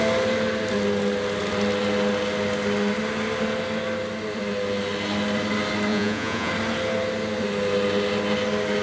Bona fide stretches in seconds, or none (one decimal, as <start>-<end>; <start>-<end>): 0.0-5.9; 6.5-8.8